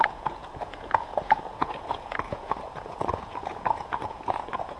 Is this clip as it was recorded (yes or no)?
no